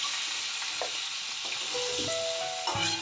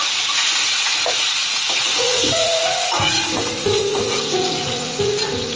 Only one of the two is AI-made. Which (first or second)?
second